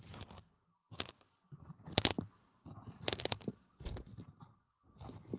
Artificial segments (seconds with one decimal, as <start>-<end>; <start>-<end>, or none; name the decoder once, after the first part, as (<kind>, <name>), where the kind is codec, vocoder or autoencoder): 0.6-1.2 (autoencoder, DAC-VAE)